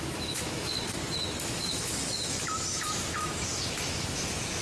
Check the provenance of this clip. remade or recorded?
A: remade